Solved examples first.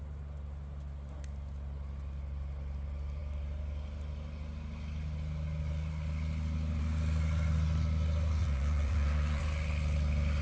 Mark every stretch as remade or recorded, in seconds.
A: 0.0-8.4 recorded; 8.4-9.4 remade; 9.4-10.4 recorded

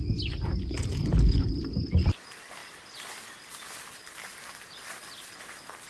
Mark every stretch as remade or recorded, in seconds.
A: 0.0-5.9 recorded